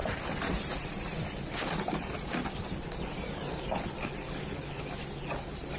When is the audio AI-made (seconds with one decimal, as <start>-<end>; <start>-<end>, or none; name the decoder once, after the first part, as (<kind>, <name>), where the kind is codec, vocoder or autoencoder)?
none